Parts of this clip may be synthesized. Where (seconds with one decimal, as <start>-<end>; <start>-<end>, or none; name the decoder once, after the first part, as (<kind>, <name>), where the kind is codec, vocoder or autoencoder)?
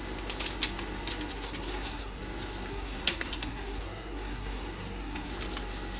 1.3-2.2 (codec, SNAC); 2.7-5.3